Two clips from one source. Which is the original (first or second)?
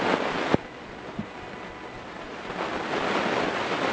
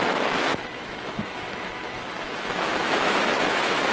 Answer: first